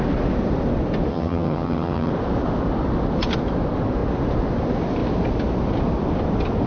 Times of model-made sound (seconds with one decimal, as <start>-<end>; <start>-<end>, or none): 1.1-2.1